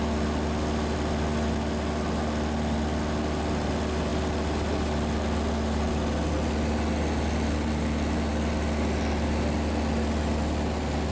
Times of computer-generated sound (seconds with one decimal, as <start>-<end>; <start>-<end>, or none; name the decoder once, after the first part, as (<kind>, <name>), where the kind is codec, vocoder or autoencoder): none